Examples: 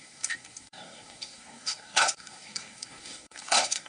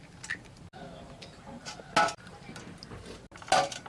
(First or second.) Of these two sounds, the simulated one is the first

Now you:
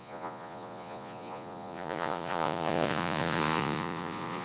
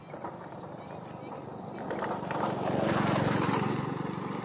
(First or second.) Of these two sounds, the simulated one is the first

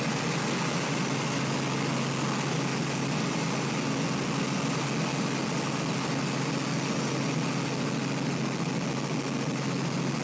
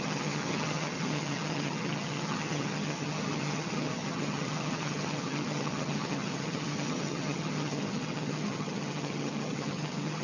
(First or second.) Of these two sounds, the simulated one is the second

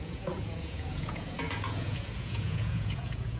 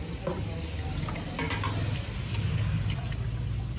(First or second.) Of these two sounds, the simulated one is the first